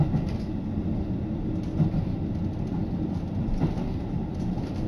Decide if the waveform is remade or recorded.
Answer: recorded